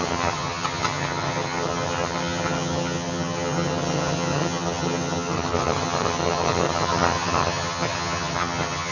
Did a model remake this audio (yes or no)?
yes